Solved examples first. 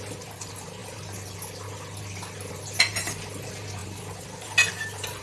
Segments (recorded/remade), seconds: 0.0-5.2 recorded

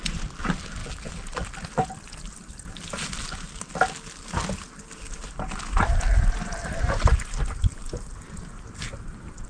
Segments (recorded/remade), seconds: 0.0-9.5 recorded